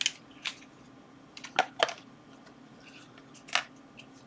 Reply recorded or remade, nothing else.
recorded